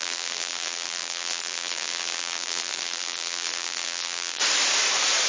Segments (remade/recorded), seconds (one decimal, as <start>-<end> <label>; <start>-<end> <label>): 0.0-4.4 remade; 4.4-5.3 recorded